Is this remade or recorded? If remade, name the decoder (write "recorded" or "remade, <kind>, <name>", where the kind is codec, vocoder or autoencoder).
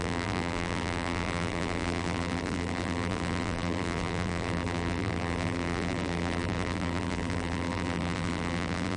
remade, vocoder, BigVGAN v2